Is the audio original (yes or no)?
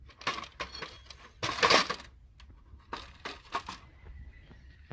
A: yes